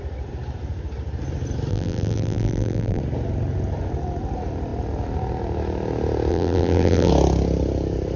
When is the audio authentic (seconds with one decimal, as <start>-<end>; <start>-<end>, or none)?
0.0-1.7; 3.0-6.3; 7.1-8.2